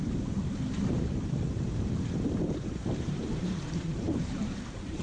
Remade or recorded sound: remade